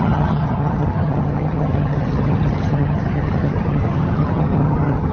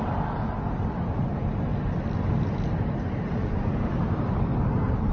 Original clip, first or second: second